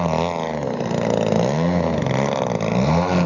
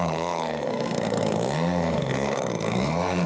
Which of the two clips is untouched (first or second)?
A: first